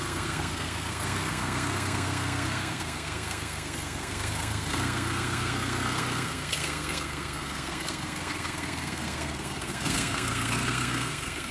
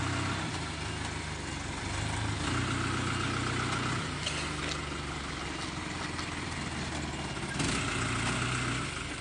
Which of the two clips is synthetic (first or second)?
first